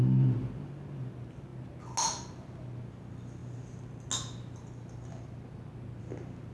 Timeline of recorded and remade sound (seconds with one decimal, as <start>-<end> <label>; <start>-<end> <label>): 0.0-6.5 recorded